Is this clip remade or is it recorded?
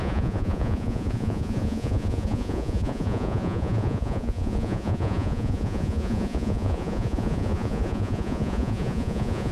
remade